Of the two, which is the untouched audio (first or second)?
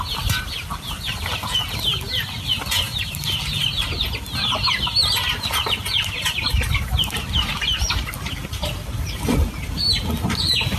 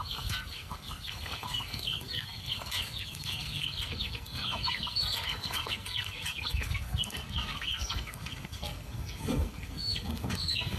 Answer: first